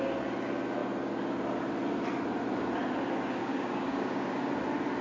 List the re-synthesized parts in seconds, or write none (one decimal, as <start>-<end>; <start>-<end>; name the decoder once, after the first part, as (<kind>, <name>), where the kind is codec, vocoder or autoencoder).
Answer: 3.4-4.5 (codec, DAC)